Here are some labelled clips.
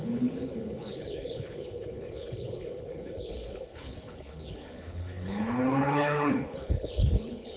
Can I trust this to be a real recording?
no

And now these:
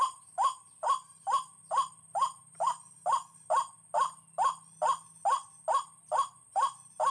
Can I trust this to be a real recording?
yes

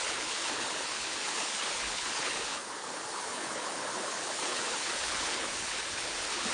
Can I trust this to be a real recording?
no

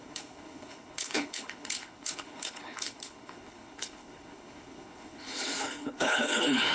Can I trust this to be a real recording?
no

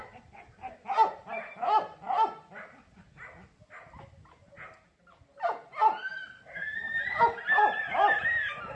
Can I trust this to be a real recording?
yes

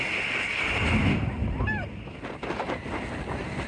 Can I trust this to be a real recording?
yes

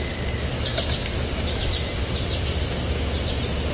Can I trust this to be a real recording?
yes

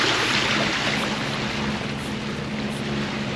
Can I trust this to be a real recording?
yes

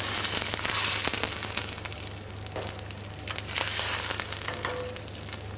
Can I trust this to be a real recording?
yes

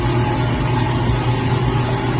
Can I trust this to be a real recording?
yes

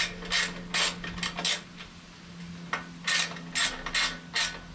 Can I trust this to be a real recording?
yes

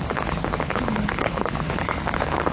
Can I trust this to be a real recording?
no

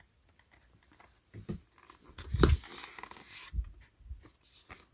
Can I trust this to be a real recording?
yes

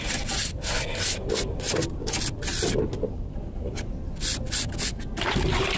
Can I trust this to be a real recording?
yes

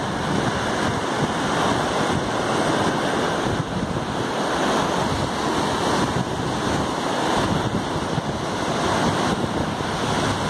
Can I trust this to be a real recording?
yes